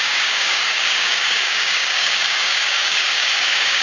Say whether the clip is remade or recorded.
remade